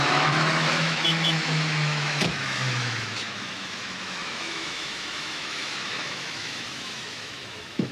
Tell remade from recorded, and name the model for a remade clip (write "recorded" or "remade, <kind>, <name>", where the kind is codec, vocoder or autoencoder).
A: remade, autoencoder, DAC-VAE